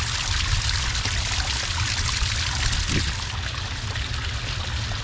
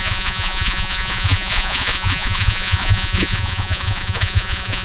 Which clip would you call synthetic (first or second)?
second